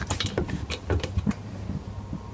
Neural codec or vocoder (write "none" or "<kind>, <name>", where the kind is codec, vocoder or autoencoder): none